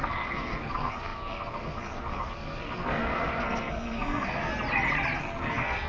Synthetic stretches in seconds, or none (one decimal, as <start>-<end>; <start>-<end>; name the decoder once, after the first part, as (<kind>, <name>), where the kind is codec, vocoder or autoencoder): 0.0-4.5 (codec, SNAC); 5.2-5.9